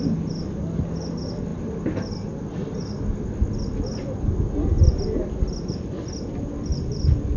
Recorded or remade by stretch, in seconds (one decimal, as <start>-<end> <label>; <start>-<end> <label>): 0.0-7.4 recorded